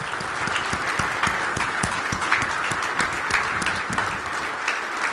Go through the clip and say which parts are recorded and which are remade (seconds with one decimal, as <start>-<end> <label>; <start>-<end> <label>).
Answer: 0.0-1.5 recorded; 1.5-2.5 remade; 2.5-5.1 recorded